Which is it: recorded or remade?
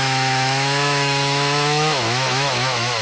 remade